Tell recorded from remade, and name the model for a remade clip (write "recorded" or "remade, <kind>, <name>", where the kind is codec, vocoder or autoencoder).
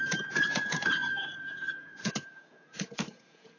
remade, vocoder, Vocos